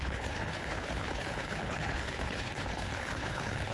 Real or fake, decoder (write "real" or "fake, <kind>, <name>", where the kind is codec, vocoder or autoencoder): fake, codec, HILCodec